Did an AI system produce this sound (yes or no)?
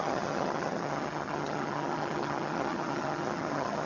yes